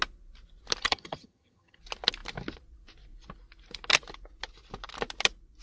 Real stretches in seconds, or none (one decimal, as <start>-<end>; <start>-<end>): 0.0-0.8; 1.8-5.6